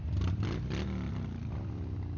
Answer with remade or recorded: recorded